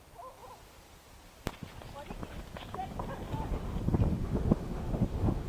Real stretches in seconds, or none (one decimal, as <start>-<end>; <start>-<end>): 0.0-4.1